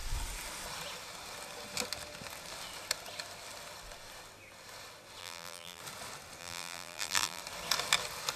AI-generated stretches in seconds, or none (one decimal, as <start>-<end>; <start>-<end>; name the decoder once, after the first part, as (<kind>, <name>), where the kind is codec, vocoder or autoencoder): 5.2-5.8 (vocoder, BigVGAN v2); 6.4-7.4